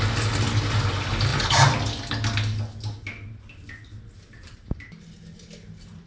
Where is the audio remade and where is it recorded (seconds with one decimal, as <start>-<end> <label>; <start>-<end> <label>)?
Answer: 0.0-1.3 recorded; 1.3-2.1 remade; 2.1-6.1 recorded